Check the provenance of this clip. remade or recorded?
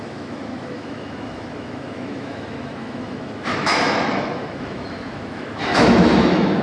remade